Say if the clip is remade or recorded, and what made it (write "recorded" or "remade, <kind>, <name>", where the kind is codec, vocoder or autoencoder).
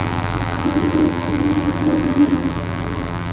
remade, vocoder, BigVGAN v2